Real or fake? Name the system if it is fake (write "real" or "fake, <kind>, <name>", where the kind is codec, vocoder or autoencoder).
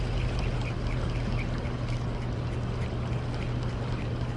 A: real